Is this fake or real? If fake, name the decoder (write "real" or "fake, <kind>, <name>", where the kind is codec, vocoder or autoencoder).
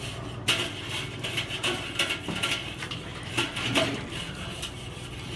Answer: real